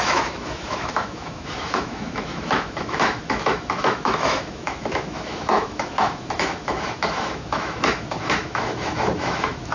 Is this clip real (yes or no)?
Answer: no